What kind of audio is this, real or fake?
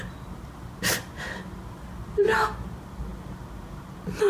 real